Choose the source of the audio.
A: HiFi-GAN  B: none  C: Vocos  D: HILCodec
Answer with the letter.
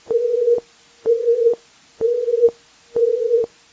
C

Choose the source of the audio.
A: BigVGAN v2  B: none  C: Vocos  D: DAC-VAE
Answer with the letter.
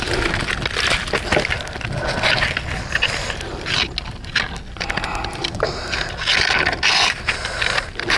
B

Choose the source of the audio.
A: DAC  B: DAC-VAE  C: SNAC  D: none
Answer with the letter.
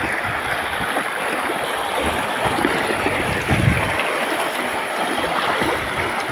D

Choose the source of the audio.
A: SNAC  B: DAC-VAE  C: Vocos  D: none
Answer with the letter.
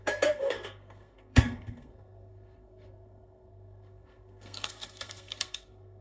A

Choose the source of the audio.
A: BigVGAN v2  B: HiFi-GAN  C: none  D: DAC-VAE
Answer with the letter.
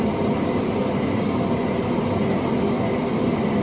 C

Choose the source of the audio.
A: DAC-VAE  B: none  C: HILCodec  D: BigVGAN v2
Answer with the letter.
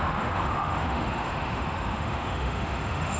A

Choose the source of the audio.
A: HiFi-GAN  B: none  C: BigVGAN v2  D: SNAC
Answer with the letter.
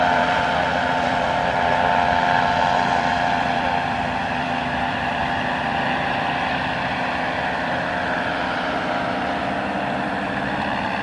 C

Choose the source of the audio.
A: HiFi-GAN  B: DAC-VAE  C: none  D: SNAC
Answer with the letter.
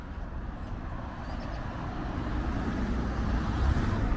C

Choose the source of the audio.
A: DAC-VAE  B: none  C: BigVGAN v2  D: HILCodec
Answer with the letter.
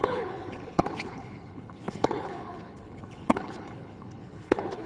D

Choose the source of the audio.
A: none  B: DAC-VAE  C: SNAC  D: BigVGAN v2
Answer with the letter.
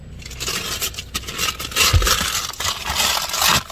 A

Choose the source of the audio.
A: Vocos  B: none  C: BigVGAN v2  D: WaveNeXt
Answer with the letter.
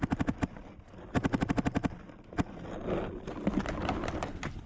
B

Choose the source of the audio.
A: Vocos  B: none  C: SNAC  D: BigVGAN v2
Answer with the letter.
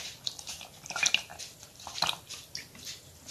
B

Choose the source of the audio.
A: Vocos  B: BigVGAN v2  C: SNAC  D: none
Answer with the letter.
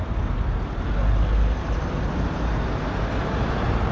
D